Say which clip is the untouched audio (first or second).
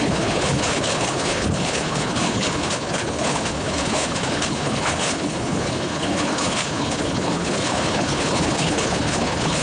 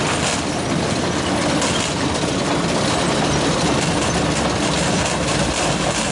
second